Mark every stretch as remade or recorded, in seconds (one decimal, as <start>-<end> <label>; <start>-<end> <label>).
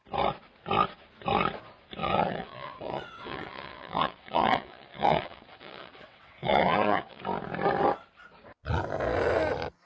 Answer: 0.0-2.0 recorded; 2.0-7.2 remade; 7.2-9.9 recorded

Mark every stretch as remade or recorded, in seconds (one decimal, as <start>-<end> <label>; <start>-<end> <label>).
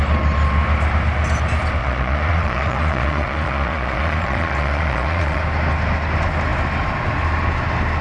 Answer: 0.0-1.8 recorded; 1.8-5.4 remade; 5.4-8.0 recorded